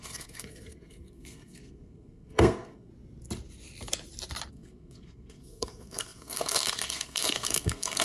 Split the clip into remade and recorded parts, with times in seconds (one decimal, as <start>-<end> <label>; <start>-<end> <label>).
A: 0.0-2.9 remade; 2.9-4.5 recorded; 4.5-8.0 remade

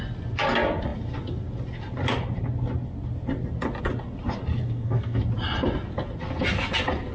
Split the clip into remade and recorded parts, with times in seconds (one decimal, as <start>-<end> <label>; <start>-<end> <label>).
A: 0.0-4.5 recorded; 4.5-5.2 remade; 5.2-7.1 recorded

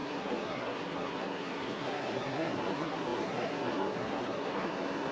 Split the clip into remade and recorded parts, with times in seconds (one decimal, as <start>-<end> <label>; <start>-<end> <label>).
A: 0.0-5.1 remade

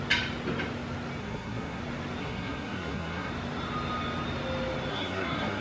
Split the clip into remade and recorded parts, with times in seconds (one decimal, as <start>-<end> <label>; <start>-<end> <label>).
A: 0.0-1.2 recorded; 1.2-1.8 remade; 1.8-2.2 recorded; 2.2-3.3 remade; 3.3-4.9 recorded; 4.9-5.6 remade

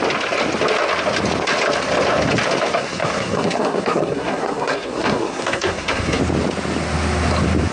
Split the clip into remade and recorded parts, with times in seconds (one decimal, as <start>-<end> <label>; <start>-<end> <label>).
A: 0.0-2.7 recorded; 2.7-6.2 remade; 6.2-7.7 recorded

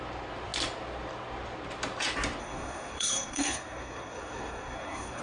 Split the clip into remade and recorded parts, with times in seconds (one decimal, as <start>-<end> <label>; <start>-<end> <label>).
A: 0.0-2.4 recorded; 2.4-5.2 remade